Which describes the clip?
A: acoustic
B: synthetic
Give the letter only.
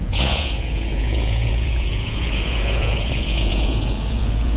B